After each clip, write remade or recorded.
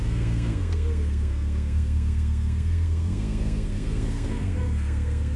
remade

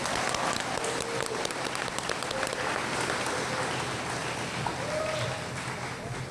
recorded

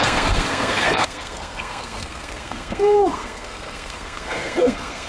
remade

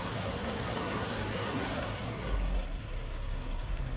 remade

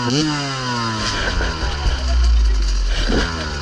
recorded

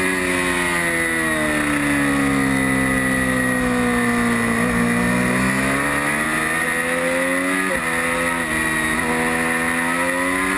recorded